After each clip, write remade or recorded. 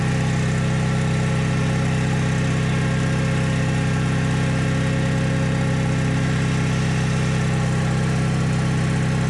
recorded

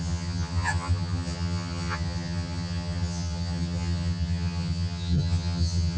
remade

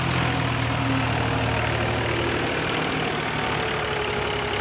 recorded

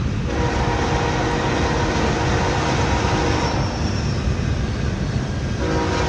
recorded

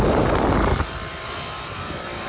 remade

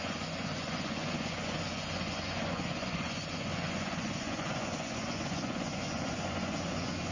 remade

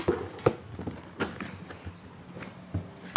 recorded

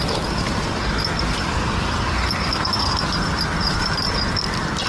recorded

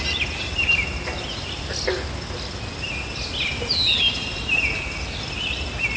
recorded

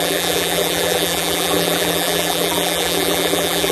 remade